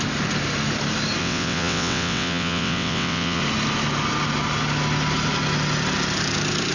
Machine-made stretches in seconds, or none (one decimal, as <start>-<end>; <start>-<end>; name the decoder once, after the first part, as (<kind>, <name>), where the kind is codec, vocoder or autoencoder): 1.2-3.4 (vocoder, WaveNeXt)